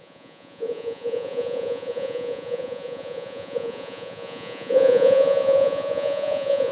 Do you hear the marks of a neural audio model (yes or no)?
yes